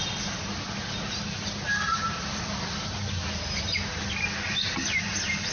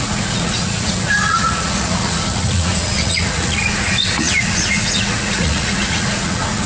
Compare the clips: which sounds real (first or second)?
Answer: first